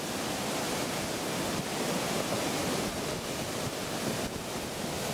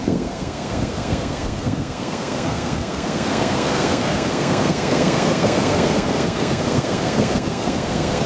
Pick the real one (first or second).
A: first